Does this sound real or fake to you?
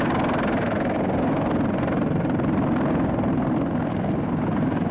real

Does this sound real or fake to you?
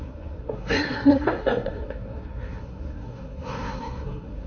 fake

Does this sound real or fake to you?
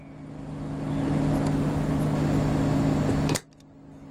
real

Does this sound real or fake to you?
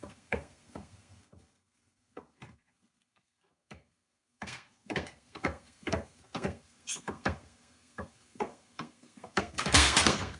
fake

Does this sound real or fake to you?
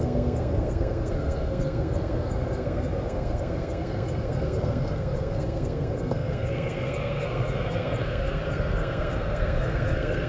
fake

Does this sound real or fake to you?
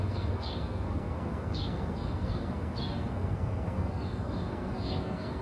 fake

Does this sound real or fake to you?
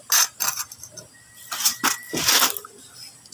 real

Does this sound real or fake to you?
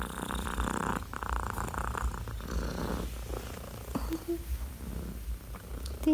real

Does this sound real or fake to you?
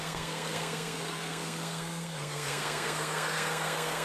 fake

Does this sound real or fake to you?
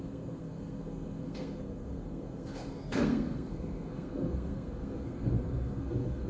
fake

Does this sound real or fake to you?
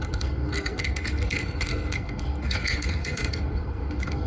fake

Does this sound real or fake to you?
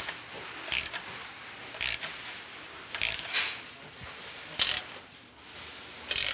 real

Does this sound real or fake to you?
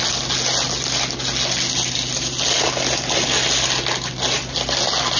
real